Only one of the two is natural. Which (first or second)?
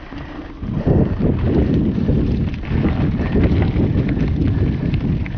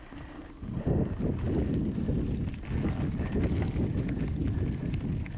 second